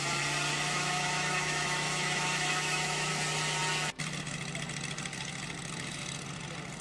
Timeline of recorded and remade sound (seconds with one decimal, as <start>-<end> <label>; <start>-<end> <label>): 0.0-0.5 recorded; 0.5-3.1 remade; 3.1-6.8 recorded